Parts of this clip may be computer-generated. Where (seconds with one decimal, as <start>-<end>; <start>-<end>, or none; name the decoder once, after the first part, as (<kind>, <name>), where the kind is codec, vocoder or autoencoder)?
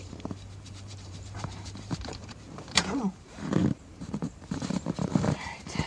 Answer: 0.0-5.9 (vocoder, BigVGAN v2)